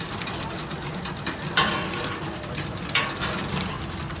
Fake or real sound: fake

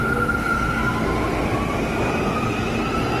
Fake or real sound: real